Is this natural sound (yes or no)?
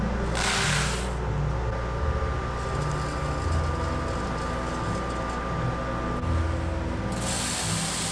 yes